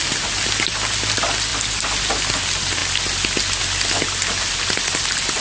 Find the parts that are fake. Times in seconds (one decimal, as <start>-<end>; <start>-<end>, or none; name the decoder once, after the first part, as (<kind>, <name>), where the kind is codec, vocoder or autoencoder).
none